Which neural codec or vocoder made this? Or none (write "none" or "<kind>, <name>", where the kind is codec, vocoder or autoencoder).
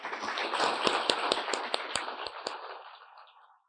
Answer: none